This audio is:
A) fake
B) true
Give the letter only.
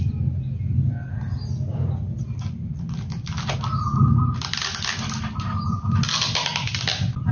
B